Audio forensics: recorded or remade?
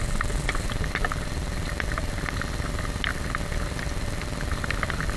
recorded